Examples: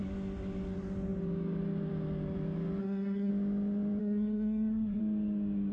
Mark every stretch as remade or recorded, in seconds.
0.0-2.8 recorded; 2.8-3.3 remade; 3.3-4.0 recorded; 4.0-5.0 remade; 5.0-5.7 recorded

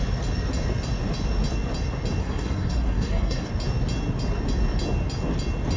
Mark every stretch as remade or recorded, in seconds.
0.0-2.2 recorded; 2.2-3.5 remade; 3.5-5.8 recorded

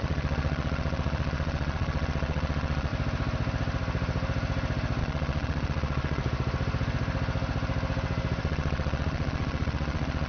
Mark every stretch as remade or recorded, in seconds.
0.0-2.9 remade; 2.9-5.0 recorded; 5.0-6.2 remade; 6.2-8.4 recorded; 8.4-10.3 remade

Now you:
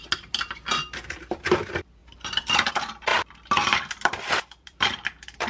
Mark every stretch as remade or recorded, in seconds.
0.0-1.4 recorded; 1.4-5.5 remade

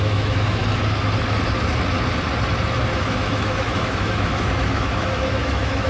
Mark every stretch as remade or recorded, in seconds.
0.0-0.6 remade; 0.6-3.0 recorded; 3.0-5.9 remade